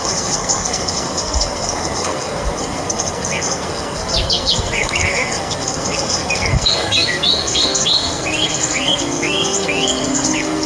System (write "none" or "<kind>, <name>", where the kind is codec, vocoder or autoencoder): codec, SNAC